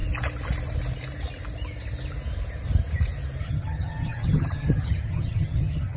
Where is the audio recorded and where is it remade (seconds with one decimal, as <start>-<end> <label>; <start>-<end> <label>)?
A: 0.0-3.4 recorded; 3.4-6.0 remade